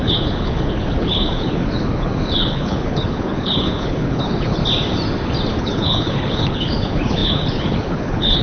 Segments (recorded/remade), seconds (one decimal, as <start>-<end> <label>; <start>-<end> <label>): 0.0-4.6 remade; 4.6-5.6 recorded; 5.6-8.4 remade